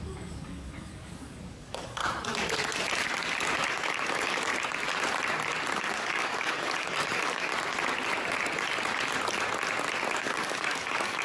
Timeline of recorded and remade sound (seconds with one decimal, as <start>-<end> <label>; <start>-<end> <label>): 0.0-2.0 remade; 2.0-3.7 recorded; 3.7-4.5 remade; 4.5-5.8 recorded; 5.8-7.5 remade; 7.5-10.1 recorded; 10.1-11.2 remade